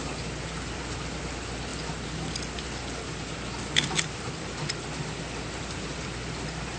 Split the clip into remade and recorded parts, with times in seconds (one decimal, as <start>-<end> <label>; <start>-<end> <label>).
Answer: 0.0-6.8 recorded